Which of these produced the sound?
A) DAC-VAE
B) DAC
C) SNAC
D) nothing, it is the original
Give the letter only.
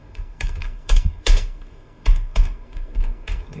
C